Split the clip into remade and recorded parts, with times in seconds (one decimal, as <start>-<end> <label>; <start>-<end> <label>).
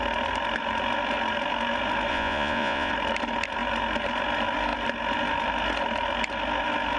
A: 0.0-2.1 recorded; 2.1-2.9 remade; 2.9-7.0 recorded